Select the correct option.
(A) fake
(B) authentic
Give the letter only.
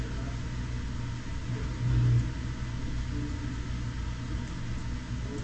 B